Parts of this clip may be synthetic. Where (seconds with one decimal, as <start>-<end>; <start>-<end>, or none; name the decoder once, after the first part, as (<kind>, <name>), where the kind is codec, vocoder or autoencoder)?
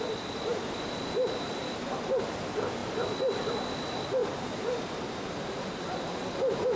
4.2-6.3 (vocoder, BigVGAN v2)